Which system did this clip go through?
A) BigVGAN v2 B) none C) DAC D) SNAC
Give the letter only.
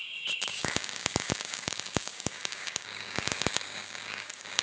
C